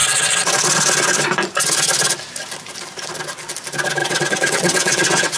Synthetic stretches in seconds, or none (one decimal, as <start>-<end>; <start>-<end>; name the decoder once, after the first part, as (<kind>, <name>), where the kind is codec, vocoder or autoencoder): 4.0-5.4 (vocoder, WaveNeXt)